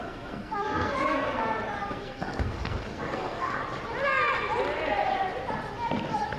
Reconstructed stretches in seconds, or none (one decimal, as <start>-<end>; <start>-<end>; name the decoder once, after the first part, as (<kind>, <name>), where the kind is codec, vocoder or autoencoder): 0.0-1.4 (codec, SNAC); 1.9-3.6